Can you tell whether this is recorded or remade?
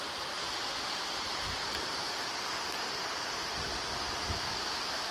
remade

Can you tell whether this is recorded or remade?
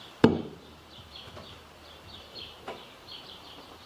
remade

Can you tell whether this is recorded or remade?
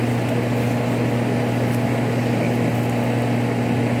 recorded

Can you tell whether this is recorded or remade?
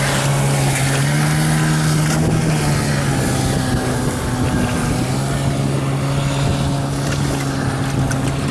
recorded